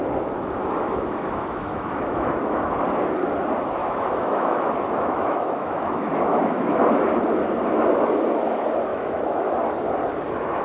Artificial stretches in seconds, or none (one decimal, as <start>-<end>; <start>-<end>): 0.6-2.7; 3.8-6.8; 8.9-9.6